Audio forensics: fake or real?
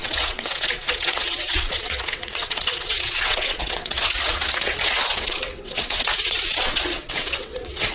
fake